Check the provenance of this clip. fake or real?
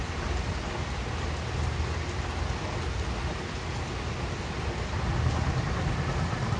real